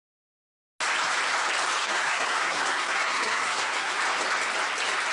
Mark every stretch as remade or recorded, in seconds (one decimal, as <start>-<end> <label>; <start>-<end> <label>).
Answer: 0.0-1.8 recorded; 1.8-3.9 remade; 3.9-5.1 recorded

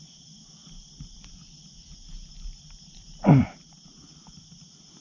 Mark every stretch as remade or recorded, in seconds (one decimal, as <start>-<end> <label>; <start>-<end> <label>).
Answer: 0.0-5.0 recorded

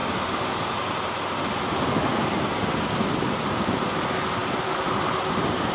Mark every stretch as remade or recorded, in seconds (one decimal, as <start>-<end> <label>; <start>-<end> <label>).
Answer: 0.0-5.7 recorded

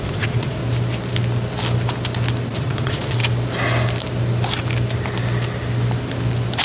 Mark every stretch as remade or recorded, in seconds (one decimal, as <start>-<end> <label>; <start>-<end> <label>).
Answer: 0.0-0.6 remade; 0.6-2.6 recorded; 2.6-3.2 remade; 3.2-6.6 recorded

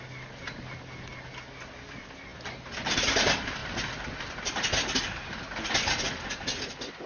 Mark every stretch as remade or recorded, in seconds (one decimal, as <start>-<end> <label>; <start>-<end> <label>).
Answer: 0.0-7.1 recorded

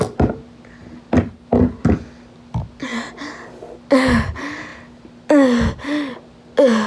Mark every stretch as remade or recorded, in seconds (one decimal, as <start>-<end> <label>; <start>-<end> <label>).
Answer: 0.0-6.9 recorded

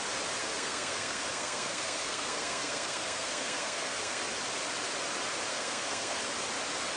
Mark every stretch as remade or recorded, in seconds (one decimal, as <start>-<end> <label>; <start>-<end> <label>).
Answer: 0.0-0.4 recorded; 0.4-4.2 remade; 4.2-5.5 recorded; 5.5-6.2 remade; 6.2-7.0 recorded